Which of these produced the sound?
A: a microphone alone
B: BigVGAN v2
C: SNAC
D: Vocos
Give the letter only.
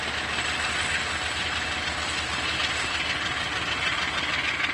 A